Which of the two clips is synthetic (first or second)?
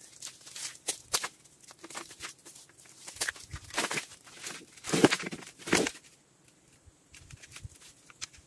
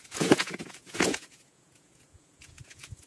second